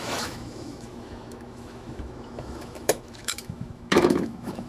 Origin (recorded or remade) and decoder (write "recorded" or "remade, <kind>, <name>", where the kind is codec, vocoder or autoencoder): remade, autoencoder, DAC-VAE